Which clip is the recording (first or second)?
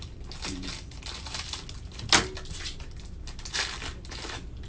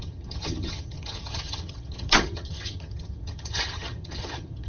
first